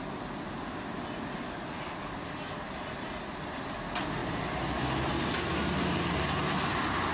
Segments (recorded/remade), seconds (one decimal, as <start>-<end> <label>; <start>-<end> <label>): 0.0-7.1 recorded